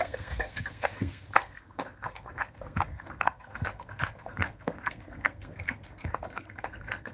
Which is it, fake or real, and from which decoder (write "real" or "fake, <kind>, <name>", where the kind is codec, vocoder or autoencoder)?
fake, codec, SNAC